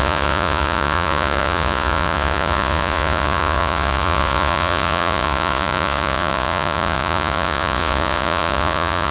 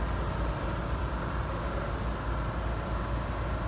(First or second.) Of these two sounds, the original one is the second